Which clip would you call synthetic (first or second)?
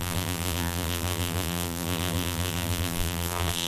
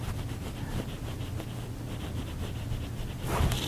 first